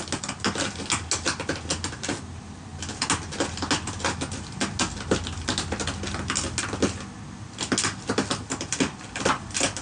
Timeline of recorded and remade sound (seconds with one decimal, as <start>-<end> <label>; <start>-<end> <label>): 0.0-9.8 recorded